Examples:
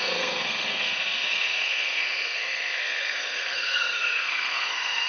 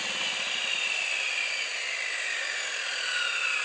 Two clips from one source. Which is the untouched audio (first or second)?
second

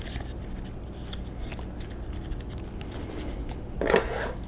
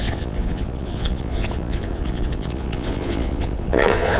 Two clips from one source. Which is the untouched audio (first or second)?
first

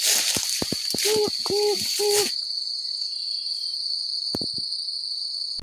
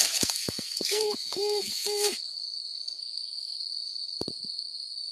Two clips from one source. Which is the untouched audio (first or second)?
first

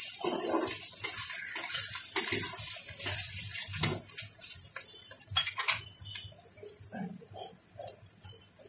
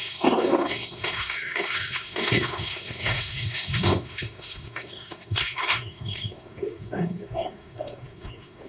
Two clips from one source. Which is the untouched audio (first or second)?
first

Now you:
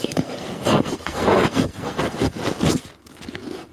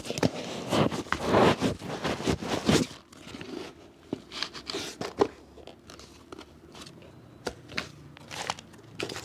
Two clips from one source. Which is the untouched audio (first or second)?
second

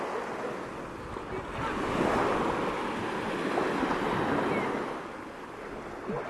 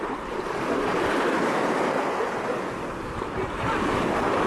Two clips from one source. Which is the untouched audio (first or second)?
first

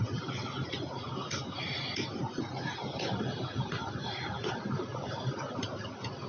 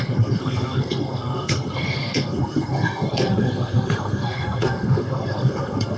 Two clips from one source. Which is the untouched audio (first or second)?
first